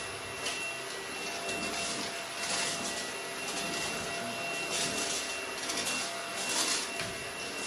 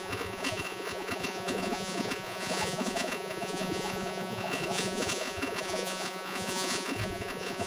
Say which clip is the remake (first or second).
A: second